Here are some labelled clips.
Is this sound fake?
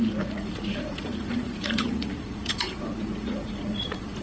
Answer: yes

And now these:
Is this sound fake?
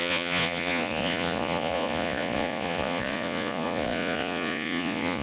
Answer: yes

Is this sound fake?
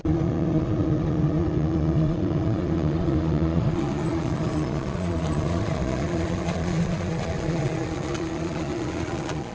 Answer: yes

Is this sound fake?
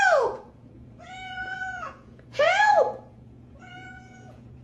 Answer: yes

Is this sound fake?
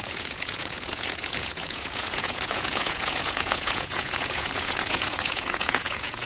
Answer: yes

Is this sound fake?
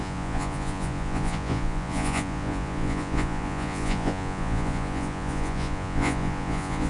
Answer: yes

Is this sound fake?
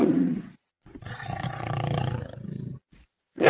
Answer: yes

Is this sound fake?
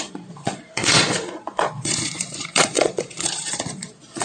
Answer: yes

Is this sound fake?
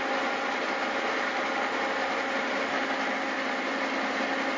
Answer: no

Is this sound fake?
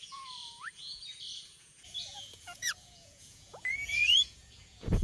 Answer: yes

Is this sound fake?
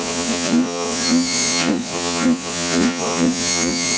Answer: yes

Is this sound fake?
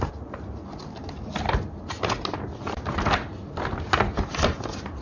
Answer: no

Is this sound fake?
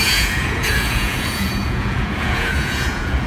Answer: yes